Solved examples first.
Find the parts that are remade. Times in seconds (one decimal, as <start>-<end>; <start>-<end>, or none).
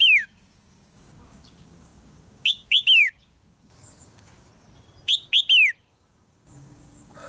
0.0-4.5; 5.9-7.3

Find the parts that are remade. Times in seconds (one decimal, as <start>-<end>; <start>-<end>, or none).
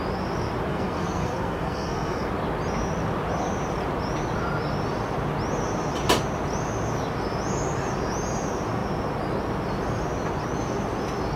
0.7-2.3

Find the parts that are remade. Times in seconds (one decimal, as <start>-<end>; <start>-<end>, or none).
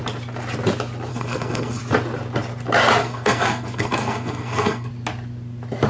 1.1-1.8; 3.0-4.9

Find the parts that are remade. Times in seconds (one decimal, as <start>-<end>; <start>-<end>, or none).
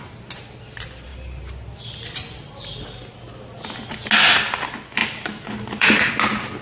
5.0-6.1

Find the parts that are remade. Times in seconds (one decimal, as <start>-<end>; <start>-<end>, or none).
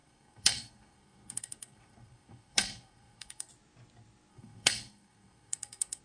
0.0-3.5; 4.3-6.0